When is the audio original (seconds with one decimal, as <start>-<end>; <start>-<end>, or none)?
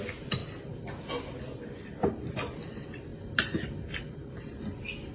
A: 0.0-5.1